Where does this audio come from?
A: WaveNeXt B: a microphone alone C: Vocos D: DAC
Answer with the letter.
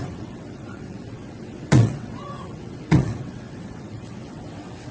A